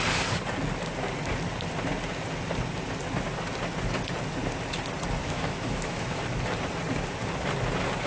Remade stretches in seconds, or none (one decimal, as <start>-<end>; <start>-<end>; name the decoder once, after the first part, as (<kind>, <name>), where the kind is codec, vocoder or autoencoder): 5.2-6.2 (autoencoder, DAC-VAE)